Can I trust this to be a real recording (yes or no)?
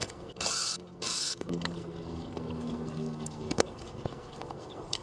no